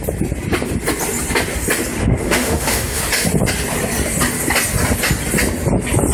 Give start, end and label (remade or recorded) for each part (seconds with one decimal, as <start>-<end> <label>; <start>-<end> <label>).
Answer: 0.0-2.0 recorded; 2.0-3.0 remade; 3.0-6.1 recorded